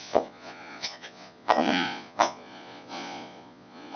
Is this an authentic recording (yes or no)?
no